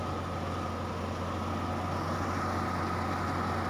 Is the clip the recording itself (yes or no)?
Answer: yes